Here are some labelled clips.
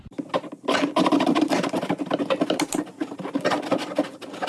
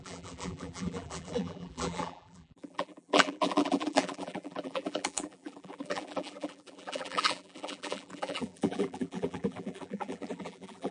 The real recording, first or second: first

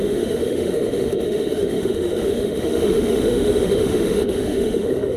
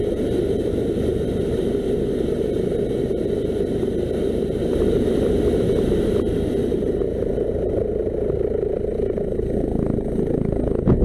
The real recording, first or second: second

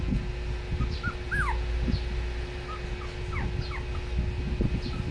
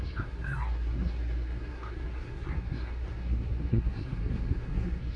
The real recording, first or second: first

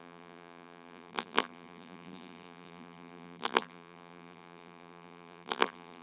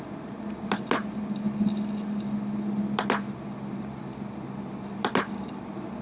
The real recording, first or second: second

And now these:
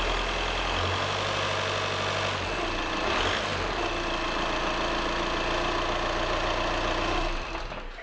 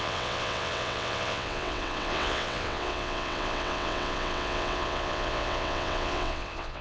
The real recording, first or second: first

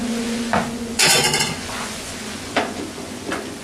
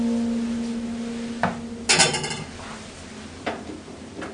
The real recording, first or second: second